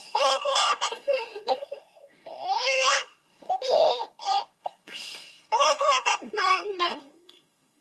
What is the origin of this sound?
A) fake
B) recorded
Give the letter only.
A